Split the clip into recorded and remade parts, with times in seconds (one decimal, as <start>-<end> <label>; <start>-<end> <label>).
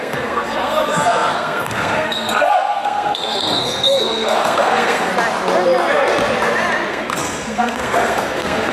0.0-5.1 remade; 5.1-6.9 recorded; 6.9-8.7 remade